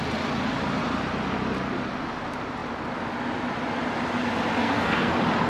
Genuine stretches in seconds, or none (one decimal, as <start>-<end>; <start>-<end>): 0.0-4.6; 5.1-5.5